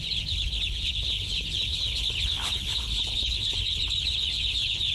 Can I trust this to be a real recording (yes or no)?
no